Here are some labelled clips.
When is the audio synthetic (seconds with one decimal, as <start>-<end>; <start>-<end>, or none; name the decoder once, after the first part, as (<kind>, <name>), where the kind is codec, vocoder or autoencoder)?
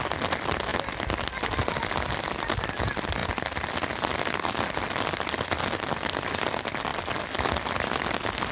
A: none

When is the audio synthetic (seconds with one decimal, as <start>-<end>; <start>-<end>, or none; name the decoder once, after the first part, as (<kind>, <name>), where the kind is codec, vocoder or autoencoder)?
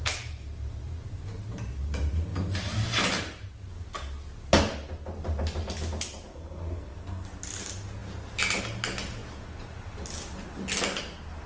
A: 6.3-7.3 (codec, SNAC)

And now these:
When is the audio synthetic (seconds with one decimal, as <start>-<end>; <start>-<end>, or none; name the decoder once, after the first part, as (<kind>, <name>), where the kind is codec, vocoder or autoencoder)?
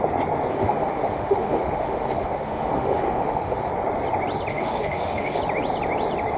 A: 0.5-3.7 (autoencoder, DAC-VAE); 4.5-5.4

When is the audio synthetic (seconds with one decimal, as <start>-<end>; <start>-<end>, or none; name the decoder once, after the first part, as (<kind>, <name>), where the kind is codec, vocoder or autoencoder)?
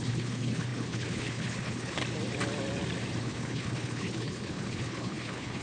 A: 0.0-2.0 (codec, HILCodec); 3.2-5.6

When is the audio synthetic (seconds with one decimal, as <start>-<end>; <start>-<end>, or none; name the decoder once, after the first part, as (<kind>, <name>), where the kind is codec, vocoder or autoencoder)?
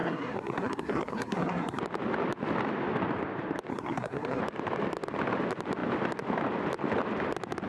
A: 0.0-1.8 (codec, SNAC); 3.7-4.4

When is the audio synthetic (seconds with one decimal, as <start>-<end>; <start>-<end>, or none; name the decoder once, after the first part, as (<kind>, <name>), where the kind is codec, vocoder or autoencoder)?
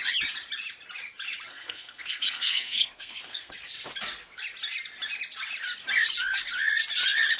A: 1.5-3.5 (codec, SNAC)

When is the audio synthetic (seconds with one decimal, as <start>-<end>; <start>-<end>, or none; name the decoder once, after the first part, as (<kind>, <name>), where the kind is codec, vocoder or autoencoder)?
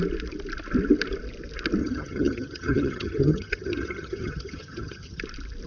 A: 1.8-5.2 (vocoder, HiFi-GAN)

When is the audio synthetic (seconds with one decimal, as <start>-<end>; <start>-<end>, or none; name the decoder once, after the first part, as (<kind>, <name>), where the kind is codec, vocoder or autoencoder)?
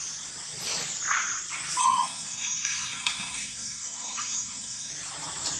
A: 1.8-4.9 (codec, SNAC)